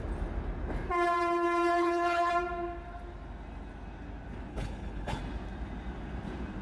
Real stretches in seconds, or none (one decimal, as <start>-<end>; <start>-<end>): 0.0-1.7; 2.3-4.5; 5.2-6.6